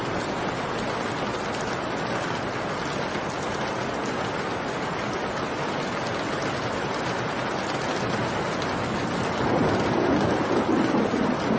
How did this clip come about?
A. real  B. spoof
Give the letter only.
A